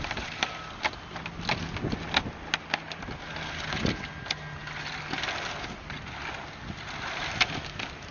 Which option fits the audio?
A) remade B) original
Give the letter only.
B